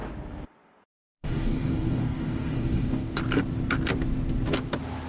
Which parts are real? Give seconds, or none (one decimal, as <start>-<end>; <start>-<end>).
0.0-1.1; 3.2-5.1